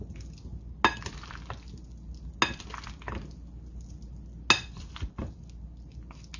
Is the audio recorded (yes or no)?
yes